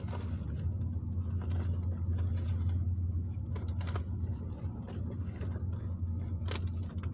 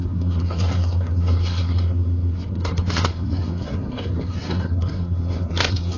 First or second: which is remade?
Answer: second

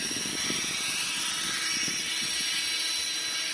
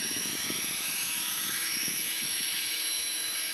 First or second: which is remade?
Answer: second